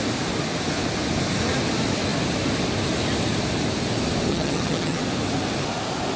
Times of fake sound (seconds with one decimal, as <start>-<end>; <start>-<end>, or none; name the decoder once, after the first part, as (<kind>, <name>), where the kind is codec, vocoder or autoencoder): 4.3-5.0 (vocoder, HiFi-GAN)